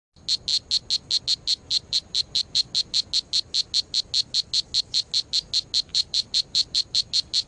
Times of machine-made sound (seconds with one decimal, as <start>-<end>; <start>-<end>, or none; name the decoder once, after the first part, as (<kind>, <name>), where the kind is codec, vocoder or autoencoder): 1.7-2.6 (vocoder, BigVGAN v2); 5.9-7.1